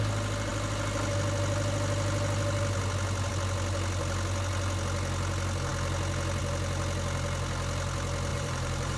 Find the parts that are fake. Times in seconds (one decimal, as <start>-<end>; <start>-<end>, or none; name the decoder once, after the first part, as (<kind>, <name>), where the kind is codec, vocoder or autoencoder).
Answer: 8.3-9.0 (vocoder, BigVGAN v2)